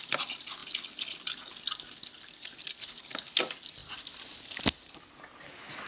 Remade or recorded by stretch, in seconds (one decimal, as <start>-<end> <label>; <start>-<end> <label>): 0.0-5.9 recorded